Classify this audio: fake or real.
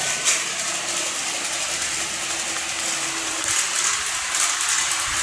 real